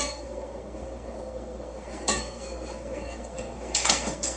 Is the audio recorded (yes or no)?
no